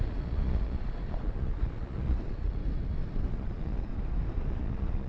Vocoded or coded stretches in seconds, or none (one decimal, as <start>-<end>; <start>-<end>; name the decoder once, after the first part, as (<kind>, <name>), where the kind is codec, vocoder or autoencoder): 0.0-2.6 (vocoder, Vocos); 3.3-3.9; 4.5-5.1